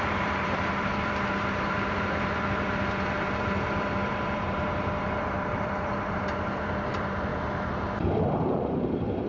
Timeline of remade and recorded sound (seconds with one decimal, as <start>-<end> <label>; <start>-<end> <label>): 0.0-9.3 remade